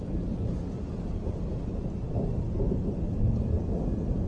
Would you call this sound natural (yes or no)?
yes